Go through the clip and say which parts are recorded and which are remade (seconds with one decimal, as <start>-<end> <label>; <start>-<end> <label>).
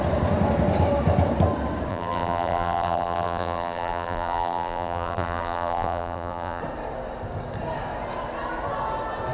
0.0-1.9 recorded; 1.9-6.6 remade; 6.6-9.3 recorded